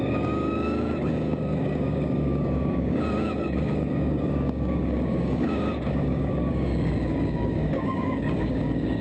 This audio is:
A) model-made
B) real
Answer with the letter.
A